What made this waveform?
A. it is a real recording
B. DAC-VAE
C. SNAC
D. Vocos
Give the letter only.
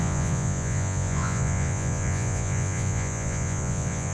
D